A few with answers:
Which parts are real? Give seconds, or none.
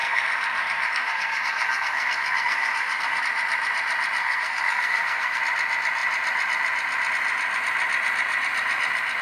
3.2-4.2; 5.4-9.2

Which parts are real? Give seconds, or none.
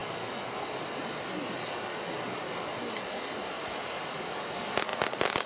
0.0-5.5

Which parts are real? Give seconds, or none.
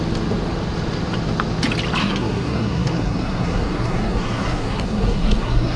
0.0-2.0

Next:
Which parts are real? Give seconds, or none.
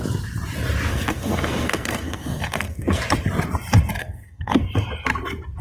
0.0-0.9; 3.0-4.0; 4.7-5.6